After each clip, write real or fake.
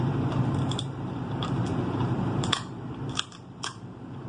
fake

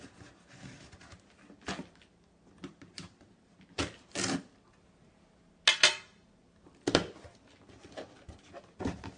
real